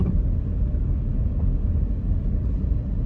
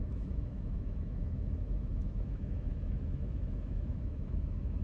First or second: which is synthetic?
second